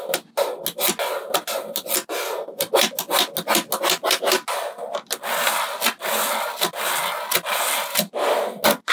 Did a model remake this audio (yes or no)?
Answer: no